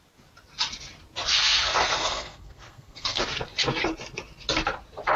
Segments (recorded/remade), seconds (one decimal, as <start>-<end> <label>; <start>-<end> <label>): 0.0-1.3 recorded; 1.3-3.2 remade; 3.2-5.2 recorded